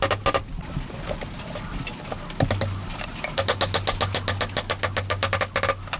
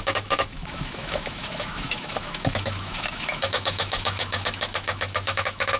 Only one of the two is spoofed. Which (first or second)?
second